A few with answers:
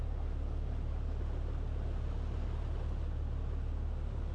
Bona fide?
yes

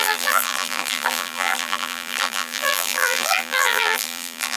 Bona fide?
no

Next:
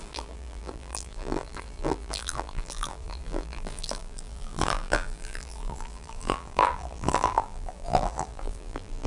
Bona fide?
no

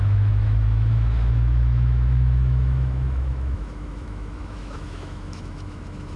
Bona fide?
no